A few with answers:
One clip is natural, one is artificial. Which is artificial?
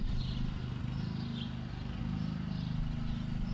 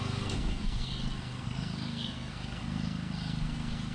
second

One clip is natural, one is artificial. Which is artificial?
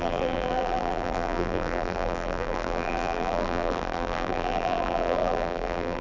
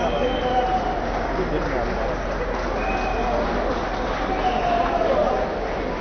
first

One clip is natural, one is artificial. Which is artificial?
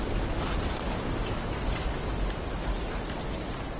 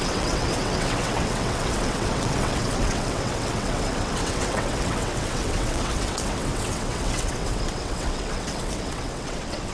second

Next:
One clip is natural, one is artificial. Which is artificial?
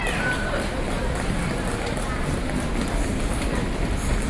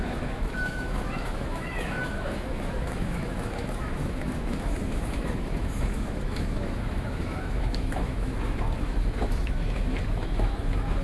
second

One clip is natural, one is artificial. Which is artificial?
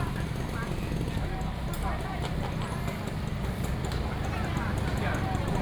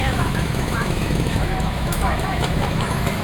second